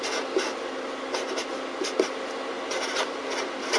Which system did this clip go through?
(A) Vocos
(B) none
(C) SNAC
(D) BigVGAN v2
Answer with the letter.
B